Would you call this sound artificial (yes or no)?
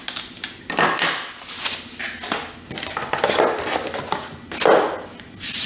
no